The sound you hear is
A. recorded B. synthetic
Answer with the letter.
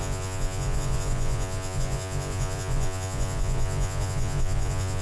B